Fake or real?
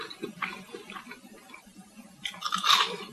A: real